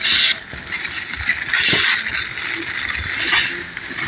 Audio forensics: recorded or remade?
recorded